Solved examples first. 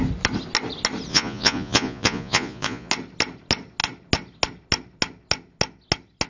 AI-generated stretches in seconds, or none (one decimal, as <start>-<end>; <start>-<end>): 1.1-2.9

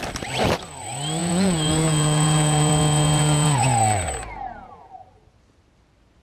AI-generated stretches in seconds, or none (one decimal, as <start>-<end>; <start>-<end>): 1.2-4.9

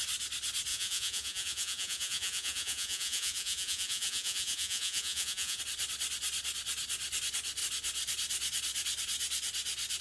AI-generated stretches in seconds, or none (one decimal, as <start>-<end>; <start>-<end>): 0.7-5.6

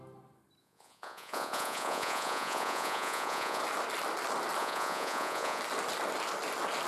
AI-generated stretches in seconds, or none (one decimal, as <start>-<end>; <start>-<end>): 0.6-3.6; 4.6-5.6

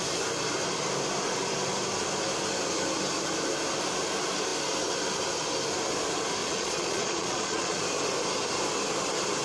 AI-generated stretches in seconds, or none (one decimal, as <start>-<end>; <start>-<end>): 6.4-7.8